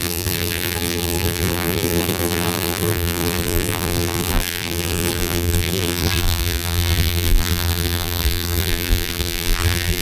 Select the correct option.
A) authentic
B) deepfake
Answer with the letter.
B